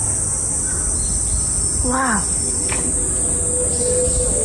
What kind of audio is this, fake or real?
real